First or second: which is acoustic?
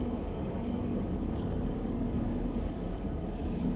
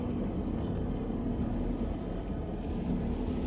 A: second